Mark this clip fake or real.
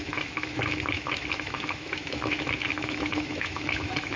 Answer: fake